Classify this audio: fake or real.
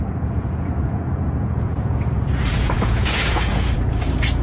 fake